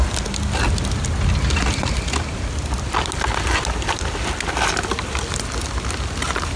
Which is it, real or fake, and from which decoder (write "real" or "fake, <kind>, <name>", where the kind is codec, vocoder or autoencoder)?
real